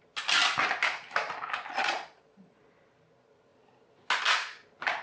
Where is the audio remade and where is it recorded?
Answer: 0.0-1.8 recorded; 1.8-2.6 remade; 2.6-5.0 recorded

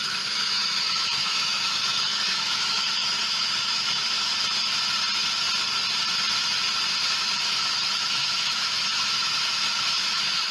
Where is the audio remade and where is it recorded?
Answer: 0.0-4.3 remade; 4.3-7.2 recorded; 7.2-10.5 remade

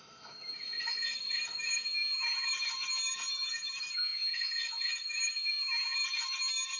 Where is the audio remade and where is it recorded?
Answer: 0.0-6.8 remade

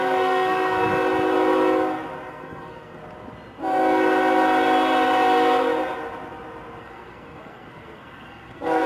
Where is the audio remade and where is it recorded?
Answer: 0.0-0.9 remade; 0.9-2.3 recorded; 2.3-3.0 remade; 3.0-6.8 recorded; 6.8-8.9 remade

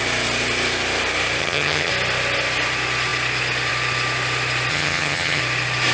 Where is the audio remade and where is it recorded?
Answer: 0.0-1.4 recorded; 1.4-1.9 remade; 1.9-4.7 recorded; 4.7-5.4 remade; 5.4-5.9 recorded

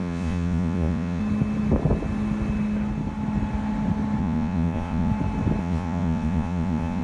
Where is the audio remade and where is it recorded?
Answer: 0.0-1.2 remade; 1.2-4.2 recorded; 4.2-5.1 remade; 5.1-5.6 recorded; 5.6-7.0 remade